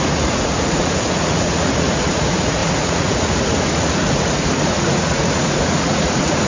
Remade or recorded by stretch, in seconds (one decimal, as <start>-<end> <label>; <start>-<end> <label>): 0.0-6.5 remade